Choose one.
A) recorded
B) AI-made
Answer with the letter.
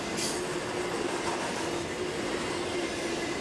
A